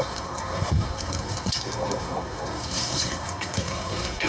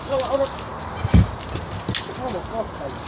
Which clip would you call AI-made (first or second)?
first